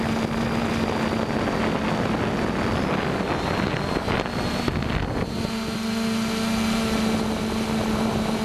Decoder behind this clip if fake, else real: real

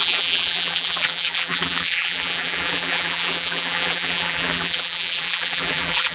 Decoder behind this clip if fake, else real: fake, vocoder, BigVGAN v2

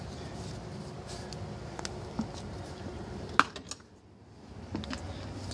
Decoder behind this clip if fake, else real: real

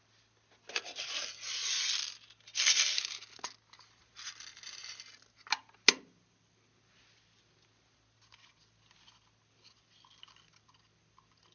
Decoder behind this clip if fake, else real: real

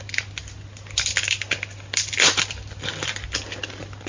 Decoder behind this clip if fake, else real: real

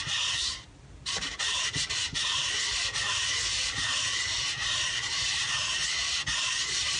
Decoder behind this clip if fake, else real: real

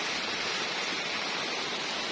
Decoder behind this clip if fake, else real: real